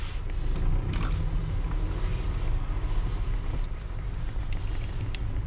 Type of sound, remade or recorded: recorded